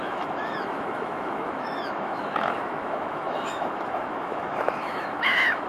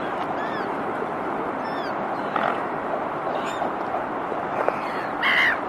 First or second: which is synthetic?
first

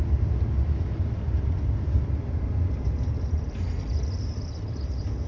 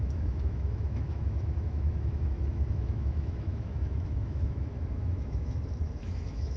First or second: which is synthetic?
second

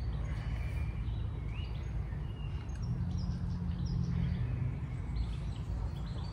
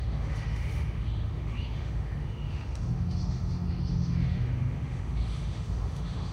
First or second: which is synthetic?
second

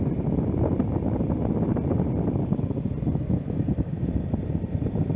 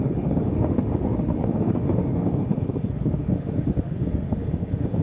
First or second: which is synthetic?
second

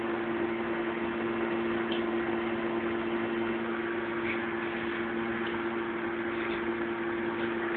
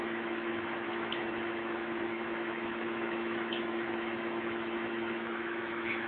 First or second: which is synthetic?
second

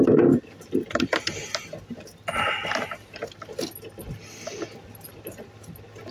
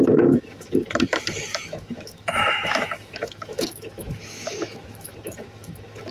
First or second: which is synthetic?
second